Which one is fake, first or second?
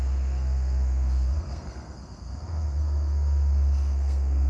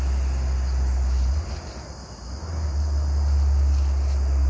first